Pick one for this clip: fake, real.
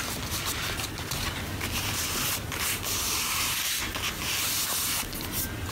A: real